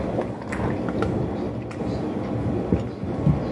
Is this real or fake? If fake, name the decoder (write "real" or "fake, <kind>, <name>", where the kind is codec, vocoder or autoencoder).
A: real